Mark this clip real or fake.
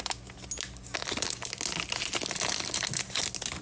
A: real